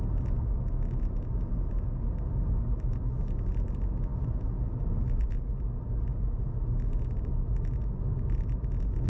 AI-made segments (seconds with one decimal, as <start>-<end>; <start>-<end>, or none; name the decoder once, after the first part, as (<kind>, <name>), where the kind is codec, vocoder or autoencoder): none